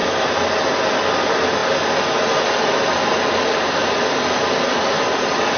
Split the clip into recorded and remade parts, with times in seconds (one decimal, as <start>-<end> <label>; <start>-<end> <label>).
0.0-1.0 recorded; 1.0-1.6 remade; 1.6-2.7 recorded; 2.7-3.8 remade; 3.8-4.8 recorded; 4.8-5.6 remade